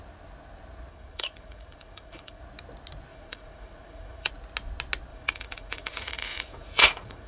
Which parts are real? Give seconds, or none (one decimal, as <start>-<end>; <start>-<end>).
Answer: 0.0-0.9; 2.4-3.1; 4.3-5.1